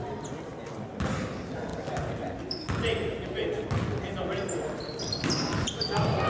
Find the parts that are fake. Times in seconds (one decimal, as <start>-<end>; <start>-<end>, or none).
none